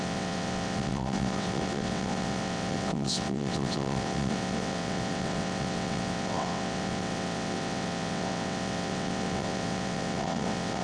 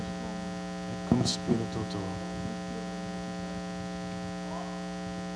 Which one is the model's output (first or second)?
first